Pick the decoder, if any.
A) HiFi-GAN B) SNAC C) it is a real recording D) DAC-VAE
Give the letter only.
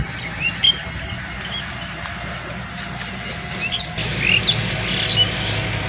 C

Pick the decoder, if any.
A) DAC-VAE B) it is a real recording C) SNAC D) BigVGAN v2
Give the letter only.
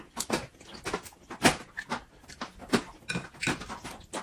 B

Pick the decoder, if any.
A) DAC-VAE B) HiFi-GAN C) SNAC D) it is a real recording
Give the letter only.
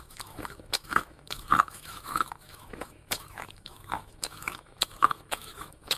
A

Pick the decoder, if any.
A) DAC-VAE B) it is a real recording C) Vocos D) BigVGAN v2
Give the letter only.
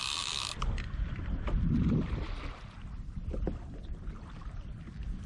B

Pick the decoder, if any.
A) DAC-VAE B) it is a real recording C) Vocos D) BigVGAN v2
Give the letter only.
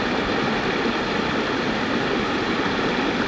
B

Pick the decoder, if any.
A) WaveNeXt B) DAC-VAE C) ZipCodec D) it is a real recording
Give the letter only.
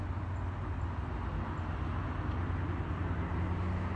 D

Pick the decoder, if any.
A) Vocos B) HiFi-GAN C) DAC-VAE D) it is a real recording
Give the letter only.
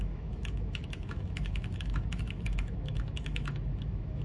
C